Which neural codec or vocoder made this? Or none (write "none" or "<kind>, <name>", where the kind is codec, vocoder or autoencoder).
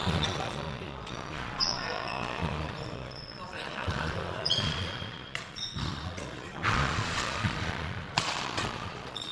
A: vocoder, Vocos